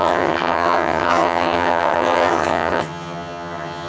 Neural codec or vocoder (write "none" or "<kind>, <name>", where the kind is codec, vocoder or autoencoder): vocoder, HiFi-GAN